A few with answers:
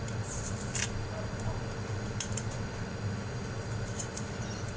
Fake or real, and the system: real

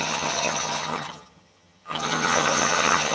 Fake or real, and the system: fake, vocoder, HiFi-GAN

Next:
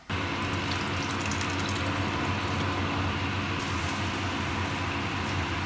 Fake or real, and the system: real